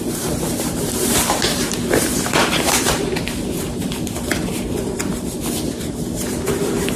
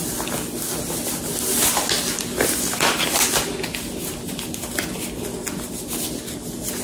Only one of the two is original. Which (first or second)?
second